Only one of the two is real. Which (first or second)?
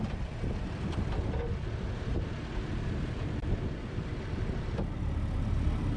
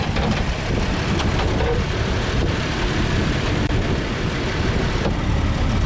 first